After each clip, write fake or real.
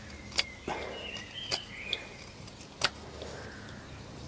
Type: real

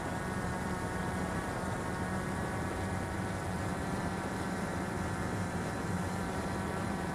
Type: fake